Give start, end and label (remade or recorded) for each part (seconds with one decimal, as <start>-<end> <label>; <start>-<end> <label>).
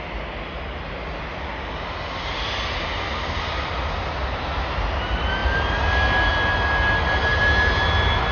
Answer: 0.0-8.3 recorded